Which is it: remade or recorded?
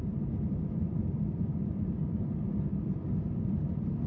recorded